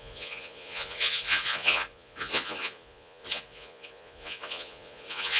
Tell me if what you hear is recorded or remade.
remade